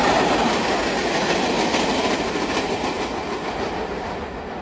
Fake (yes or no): no